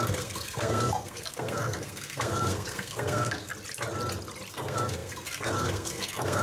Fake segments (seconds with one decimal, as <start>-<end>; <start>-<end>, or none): 0.0-3.5; 4.5-6.4